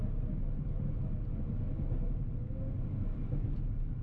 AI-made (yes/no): no